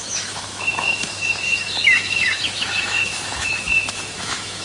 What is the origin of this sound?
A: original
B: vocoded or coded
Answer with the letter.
B